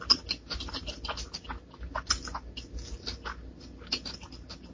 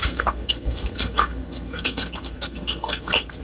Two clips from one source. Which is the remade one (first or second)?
second